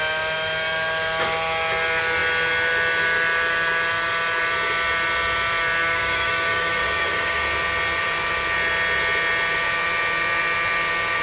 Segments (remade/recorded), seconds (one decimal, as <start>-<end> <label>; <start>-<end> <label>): 0.0-5.8 recorded; 5.8-7.4 remade; 7.4-11.2 recorded